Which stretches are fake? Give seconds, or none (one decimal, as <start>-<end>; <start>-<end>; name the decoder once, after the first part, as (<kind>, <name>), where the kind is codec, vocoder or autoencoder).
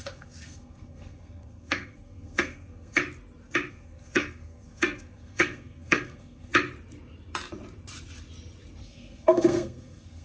0.0-3.0 (codec, SNAC); 3.7-6.5; 8.8-10.2